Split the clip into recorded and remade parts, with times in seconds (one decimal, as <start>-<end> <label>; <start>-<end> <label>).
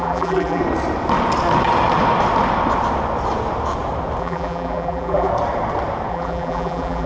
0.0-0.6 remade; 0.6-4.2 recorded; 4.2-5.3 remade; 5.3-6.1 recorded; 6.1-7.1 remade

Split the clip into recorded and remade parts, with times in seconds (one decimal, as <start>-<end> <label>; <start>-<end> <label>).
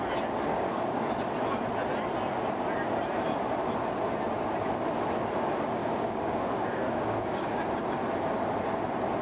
0.0-0.5 recorded; 0.5-1.1 remade; 1.1-5.8 recorded; 5.8-7.8 remade; 7.8-9.2 recorded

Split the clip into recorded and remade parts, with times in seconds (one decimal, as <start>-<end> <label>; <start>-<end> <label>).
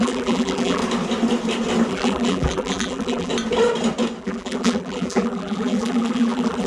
0.0-0.8 remade; 0.8-1.9 recorded; 1.9-3.3 remade; 3.3-4.2 recorded; 4.2-6.7 remade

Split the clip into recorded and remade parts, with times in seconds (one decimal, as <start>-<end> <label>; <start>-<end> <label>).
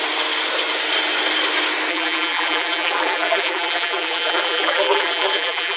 0.0-1.9 recorded; 1.9-5.8 remade